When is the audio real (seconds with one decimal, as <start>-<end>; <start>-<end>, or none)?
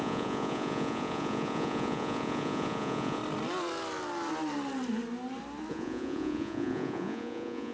3.2-5.7